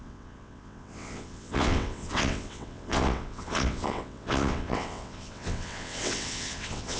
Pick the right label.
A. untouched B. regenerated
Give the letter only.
B